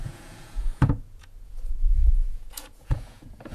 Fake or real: fake